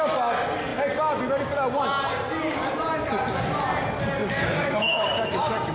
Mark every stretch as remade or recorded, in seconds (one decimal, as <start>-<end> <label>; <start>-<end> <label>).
0.0-4.2 recorded; 4.2-5.7 remade